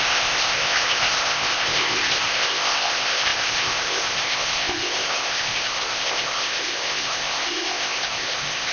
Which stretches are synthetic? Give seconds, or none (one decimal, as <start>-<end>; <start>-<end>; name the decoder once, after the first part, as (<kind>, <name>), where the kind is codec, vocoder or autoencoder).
0.0-8.7 (codec, ZipCodec)